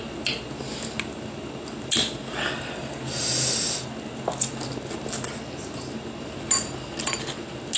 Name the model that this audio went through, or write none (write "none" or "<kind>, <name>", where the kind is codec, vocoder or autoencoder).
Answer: none